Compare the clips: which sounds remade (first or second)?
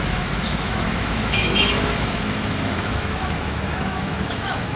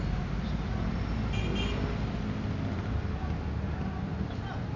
first